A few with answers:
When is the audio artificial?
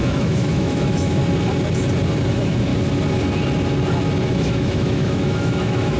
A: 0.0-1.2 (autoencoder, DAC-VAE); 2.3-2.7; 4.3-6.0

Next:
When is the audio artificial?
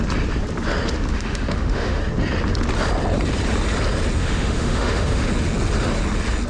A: 1.1-2.0 (autoencoder, DAC-VAE); 4.2-5.3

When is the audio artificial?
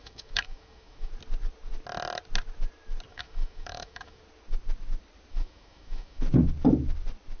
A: 0.0-1.1 (autoencoder, DAC-VAE); 3.1-4.2; 5.3-6.2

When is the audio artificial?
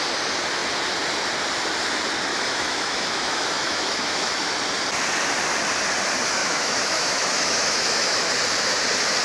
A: 2.3-4.5 (autoencoder, DAC-VAE); 6.4-8.3